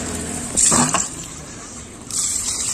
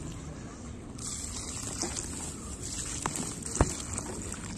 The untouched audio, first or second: second